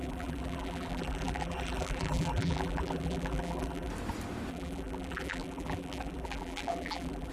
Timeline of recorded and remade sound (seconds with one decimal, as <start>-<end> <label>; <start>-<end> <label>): 0.0-3.9 remade; 3.9-4.5 recorded; 4.5-7.3 remade